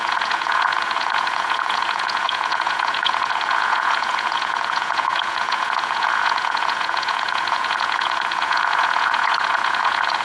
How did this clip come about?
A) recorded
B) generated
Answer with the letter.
B